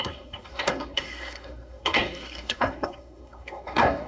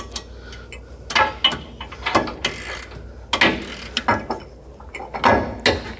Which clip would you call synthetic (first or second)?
first